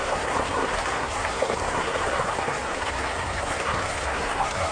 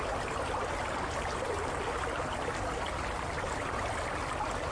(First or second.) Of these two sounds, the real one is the second